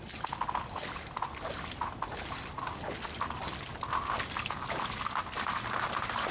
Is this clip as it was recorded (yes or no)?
yes